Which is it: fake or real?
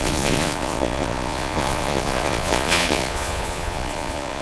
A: fake